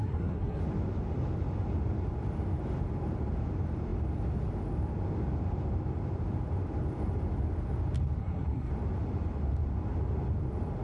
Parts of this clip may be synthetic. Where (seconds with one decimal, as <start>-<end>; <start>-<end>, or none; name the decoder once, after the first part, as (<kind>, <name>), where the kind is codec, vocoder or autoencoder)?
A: 0.0-0.6 (codec, SNAC); 8.2-8.7